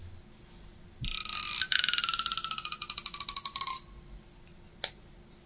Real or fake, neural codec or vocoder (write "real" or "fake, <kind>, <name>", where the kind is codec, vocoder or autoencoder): real